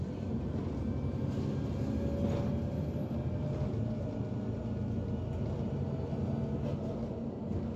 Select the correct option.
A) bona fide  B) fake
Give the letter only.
A